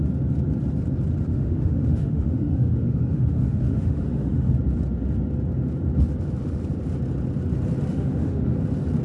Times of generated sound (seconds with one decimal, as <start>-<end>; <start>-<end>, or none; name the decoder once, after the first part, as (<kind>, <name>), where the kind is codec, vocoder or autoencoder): 1.3-4.5 (autoencoder, DAC-VAE); 7.9-8.6